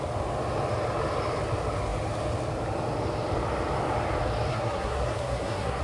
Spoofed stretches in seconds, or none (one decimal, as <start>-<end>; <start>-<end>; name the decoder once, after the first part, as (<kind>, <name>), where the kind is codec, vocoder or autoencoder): 4.5-5.8 (codec, SNAC)